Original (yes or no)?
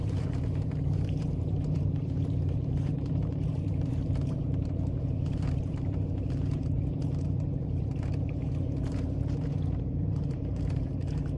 no